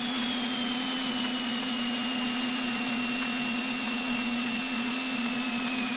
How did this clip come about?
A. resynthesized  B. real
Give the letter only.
A